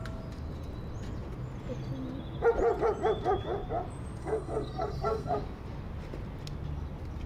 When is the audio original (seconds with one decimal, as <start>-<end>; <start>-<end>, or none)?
0.0-4.2; 5.4-7.3